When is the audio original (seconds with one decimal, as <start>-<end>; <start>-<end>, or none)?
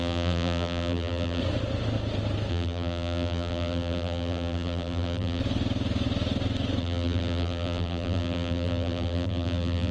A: 1.4-2.5; 5.4-6.8